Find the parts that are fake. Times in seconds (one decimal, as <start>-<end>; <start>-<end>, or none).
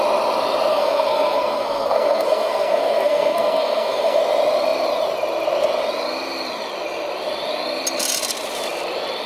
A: 0.7-4.2